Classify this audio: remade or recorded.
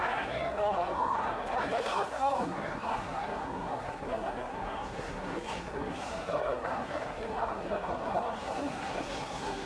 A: remade